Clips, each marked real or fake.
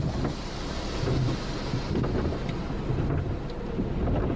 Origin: real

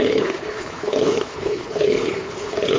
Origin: fake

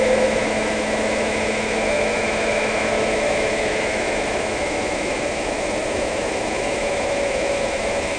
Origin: fake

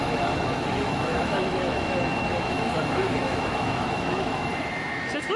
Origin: fake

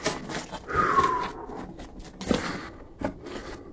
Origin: real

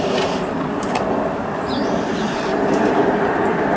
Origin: real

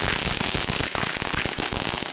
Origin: fake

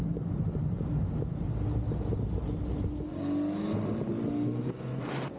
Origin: real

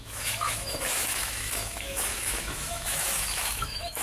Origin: fake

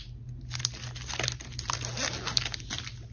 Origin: real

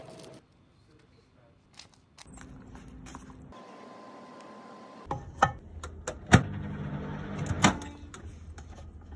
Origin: real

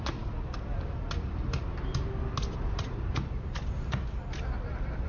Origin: real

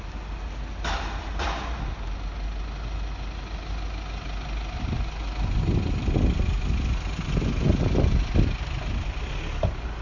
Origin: real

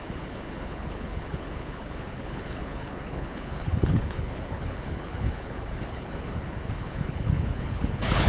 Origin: fake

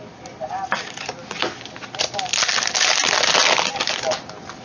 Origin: real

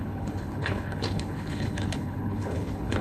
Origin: fake